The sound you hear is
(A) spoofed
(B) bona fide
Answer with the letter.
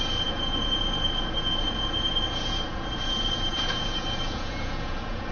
A